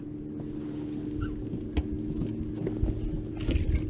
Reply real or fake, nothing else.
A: real